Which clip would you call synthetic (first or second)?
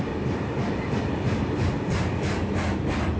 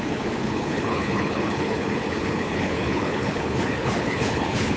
second